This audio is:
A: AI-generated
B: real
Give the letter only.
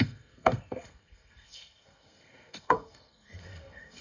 A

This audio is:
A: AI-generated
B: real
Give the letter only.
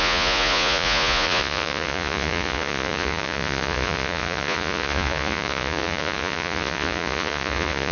A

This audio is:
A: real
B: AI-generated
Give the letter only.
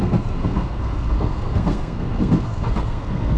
B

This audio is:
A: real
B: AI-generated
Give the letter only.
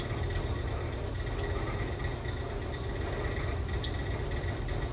A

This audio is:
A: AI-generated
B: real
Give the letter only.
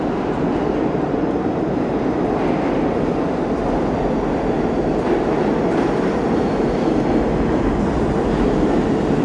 B